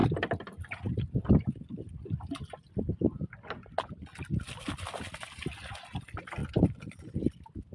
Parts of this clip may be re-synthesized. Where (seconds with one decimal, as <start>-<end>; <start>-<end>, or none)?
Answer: none